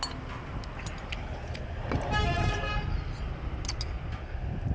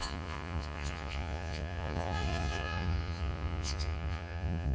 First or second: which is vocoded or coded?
second